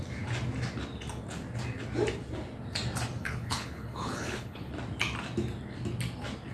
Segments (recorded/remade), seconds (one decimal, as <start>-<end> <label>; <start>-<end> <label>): 0.0-3.2 recorded; 3.2-4.7 remade; 4.7-6.5 recorded